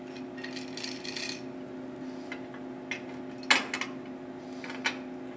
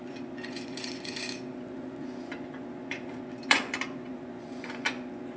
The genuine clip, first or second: first